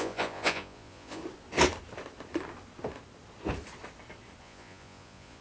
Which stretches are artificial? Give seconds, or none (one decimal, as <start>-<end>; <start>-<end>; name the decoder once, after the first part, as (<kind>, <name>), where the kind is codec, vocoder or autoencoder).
0.0-1.2 (vocoder, Vocos); 4.4-5.4